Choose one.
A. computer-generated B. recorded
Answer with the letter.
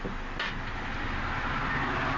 B